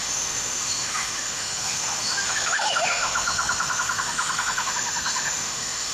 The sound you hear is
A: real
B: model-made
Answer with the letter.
B